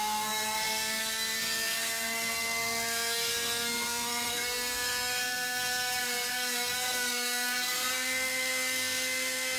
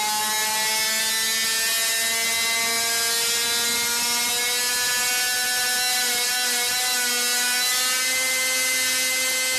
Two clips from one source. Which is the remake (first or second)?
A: first